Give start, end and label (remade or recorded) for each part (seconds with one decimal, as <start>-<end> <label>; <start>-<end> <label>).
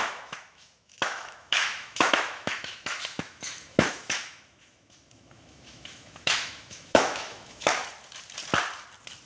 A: 0.0-7.8 remade; 7.8-9.3 recorded